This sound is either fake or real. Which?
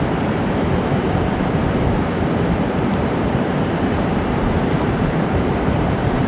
fake